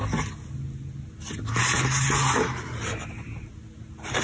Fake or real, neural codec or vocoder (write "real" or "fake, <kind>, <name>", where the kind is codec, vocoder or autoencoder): real